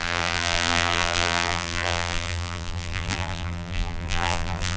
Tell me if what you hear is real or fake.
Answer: fake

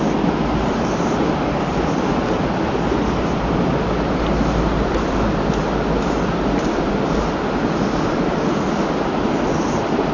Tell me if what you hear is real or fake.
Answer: real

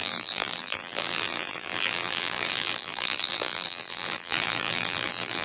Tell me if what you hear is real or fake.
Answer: fake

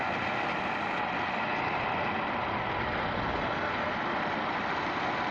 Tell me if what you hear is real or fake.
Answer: real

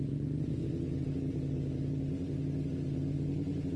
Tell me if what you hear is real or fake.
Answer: real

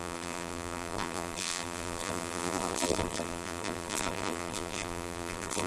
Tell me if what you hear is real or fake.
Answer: fake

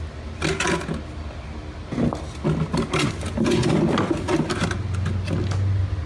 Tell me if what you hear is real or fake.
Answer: real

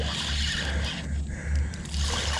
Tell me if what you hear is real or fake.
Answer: real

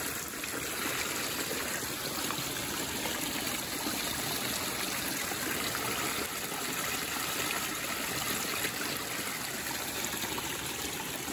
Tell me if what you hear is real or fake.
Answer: real